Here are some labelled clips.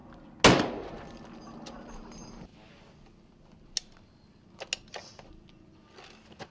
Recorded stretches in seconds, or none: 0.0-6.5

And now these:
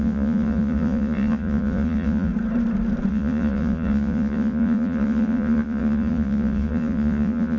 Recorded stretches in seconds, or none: 2.3-3.1

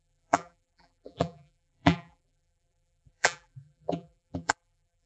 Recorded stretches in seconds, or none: none